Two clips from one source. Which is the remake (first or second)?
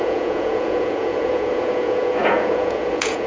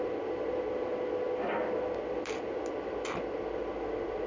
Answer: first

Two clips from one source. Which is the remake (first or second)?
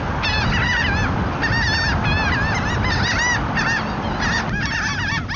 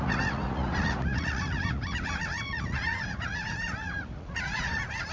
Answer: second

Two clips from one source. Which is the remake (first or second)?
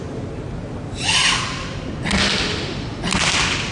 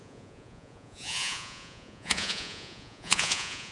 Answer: second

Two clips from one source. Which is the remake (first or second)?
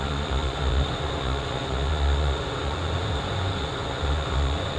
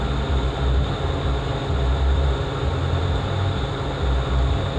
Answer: first